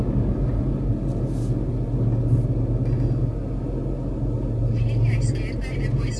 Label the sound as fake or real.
real